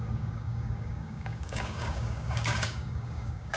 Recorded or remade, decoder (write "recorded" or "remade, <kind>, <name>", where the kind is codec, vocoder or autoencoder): remade, codec, DAC